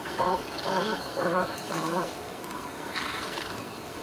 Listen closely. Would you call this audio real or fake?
fake